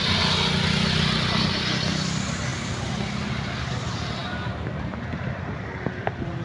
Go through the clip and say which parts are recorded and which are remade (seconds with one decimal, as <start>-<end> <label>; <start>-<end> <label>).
0.0-6.4 recorded